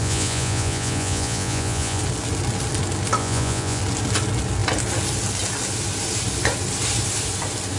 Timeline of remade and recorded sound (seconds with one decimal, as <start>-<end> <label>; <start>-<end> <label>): 0.0-2.0 remade; 2.0-3.2 recorded; 3.2-3.8 remade; 3.8-7.8 recorded